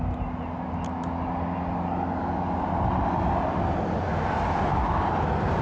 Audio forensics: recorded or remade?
recorded